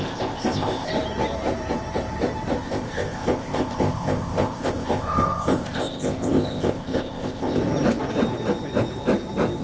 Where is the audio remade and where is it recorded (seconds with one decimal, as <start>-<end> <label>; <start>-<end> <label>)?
0.0-0.9 remade; 0.9-2.6 recorded; 2.6-7.6 remade; 7.6-9.6 recorded